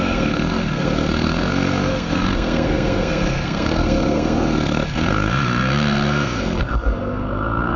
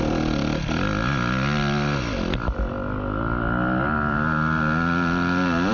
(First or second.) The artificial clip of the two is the first